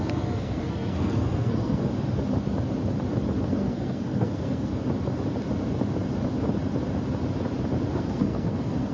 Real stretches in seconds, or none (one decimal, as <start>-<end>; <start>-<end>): 1.9-3.4; 4.7-7.9